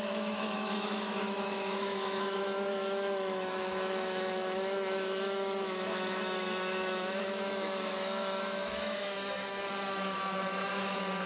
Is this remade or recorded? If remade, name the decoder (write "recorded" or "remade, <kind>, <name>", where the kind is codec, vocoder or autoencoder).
remade, autoencoder, DAC-VAE